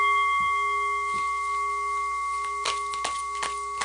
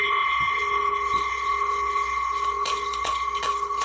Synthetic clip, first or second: second